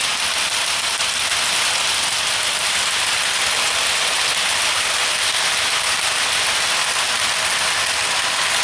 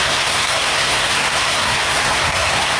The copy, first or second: second